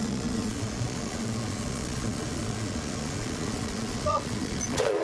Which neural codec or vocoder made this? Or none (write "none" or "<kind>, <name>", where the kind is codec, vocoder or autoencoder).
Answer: vocoder, Vocos